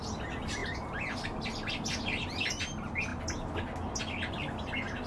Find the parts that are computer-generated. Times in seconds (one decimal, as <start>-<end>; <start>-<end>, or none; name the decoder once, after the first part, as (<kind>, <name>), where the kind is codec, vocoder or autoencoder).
none